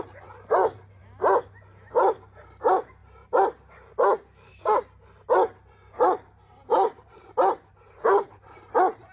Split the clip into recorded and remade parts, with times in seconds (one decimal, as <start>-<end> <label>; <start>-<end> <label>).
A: 0.0-6.7 recorded; 6.7-7.3 remade; 7.3-9.1 recorded